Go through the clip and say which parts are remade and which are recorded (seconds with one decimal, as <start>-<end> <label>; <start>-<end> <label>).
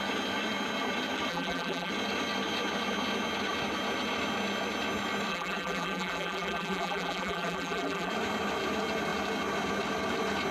0.0-1.3 recorded; 1.3-1.9 remade; 1.9-5.3 recorded; 5.3-8.1 remade; 8.1-10.5 recorded